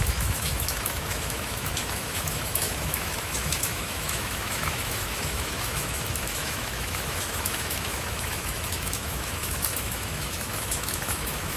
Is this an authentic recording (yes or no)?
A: no